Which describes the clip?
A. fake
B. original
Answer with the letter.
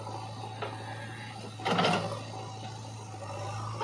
B